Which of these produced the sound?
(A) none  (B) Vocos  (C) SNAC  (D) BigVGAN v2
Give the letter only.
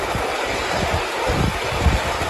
A